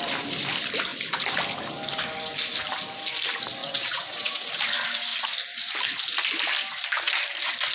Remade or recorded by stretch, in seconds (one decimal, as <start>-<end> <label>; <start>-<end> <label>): 0.0-3.6 recorded; 3.6-4.5 remade; 4.5-7.7 recorded

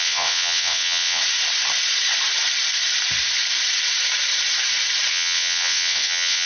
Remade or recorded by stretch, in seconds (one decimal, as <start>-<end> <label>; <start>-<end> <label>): 0.0-1.2 remade; 1.2-5.1 recorded; 5.1-6.5 remade